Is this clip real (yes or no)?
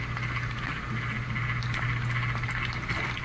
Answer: yes